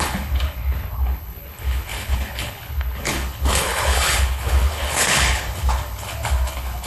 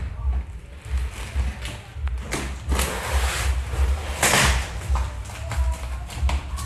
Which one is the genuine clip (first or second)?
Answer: second